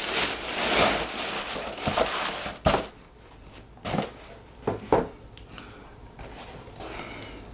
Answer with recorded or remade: recorded